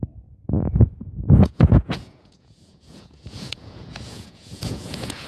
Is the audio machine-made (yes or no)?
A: yes